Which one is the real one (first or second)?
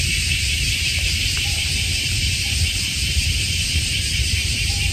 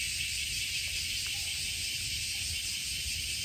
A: second